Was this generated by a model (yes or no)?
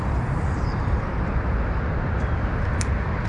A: no